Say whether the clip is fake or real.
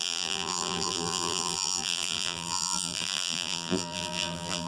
fake